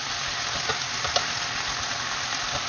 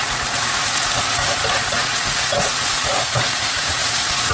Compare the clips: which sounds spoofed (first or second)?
second